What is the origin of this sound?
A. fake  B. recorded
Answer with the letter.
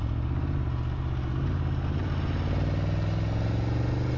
B